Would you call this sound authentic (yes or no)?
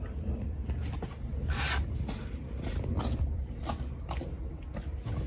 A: yes